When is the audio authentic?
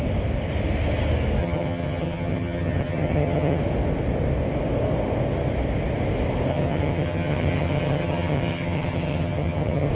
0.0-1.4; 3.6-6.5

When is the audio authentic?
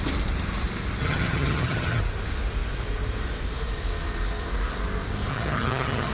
0.0-1.0; 2.0-5.3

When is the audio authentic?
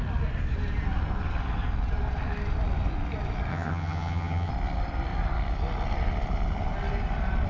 0.0-3.5; 4.5-7.5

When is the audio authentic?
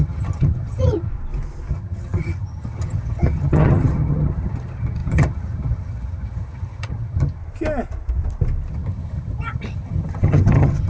1.1-1.7; 7.4-8.7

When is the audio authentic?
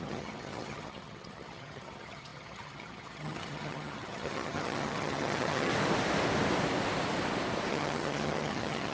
5.7-7.7